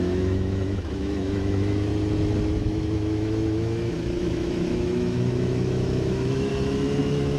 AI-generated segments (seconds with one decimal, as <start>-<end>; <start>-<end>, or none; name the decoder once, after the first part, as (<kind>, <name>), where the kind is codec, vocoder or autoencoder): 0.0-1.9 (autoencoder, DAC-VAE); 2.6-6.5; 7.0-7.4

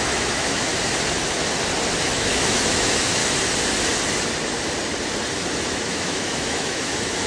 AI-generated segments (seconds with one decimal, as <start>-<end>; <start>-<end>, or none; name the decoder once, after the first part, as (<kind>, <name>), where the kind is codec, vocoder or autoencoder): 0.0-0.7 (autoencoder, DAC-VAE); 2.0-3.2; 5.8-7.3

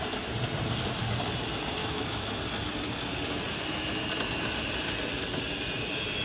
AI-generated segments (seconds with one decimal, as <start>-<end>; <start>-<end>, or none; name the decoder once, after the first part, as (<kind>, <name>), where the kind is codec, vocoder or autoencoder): 1.8-2.4 (autoencoder, DAC-VAE)

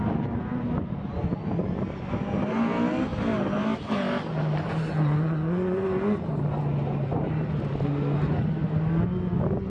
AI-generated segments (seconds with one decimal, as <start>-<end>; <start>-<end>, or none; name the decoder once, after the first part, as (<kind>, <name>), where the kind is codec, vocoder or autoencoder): none

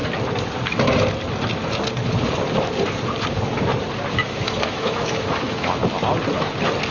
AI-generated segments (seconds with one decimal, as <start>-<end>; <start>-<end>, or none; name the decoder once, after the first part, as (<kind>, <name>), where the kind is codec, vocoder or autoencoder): 4.1-5.8 (autoencoder, DAC-VAE)

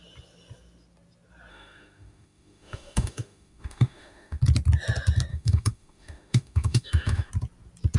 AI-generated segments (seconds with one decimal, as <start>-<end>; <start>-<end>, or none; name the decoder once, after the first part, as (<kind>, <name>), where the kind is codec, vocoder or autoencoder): 1.5-4.4 (autoencoder, DAC-VAE); 5.3-7.3

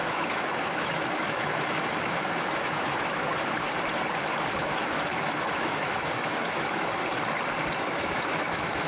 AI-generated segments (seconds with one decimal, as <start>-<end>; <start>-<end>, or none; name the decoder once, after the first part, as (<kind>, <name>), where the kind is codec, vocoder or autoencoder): 0.0-3.3 (autoencoder, DAC-VAE); 4.6-7.0; 7.8-8.9

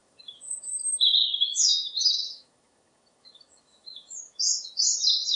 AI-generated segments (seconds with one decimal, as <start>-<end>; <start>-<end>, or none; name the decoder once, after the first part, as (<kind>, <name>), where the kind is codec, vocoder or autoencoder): 0.0-0.7 (autoencoder, DAC-VAE); 1.2-4.4